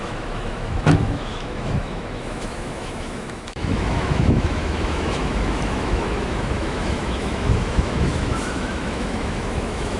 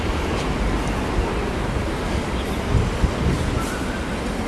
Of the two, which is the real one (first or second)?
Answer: second